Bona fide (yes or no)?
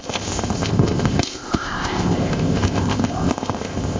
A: no